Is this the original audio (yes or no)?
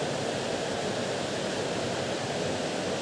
yes